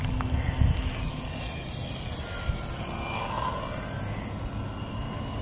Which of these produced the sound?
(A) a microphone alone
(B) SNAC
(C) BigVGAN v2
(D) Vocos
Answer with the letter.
A